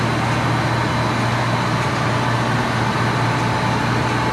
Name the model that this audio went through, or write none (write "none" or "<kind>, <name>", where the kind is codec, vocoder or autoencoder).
none